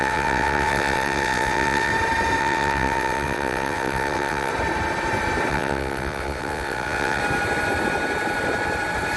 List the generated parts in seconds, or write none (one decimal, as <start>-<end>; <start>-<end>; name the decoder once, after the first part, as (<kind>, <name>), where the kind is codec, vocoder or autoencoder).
0.0-1.9 (vocoder, WaveNeXt); 2.4-4.5; 5.5-7.2